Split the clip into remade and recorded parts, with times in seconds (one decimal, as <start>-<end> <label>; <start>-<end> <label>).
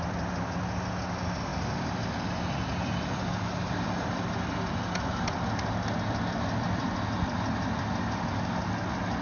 0.0-9.2 recorded